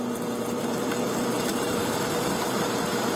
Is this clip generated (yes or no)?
yes